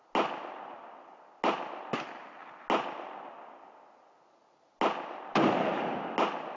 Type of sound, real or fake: real